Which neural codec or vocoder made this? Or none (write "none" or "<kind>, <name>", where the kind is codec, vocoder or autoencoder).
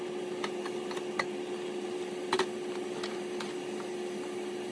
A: none